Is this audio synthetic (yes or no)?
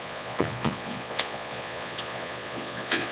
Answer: yes